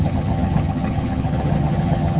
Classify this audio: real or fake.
fake